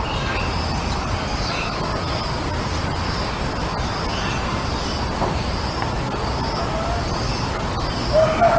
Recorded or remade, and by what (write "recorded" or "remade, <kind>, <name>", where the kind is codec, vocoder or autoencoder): recorded